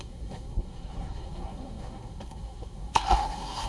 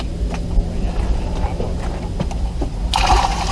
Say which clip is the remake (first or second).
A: first